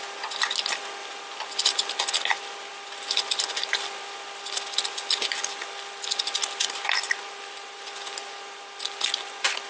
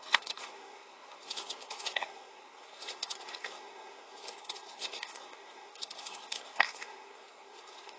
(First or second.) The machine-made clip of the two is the second